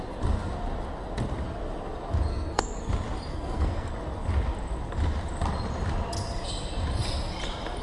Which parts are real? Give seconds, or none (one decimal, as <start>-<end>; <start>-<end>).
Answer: 0.0-2.3; 2.9-3.3; 3.9-7.8